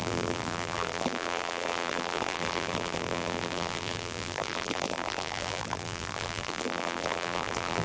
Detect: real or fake fake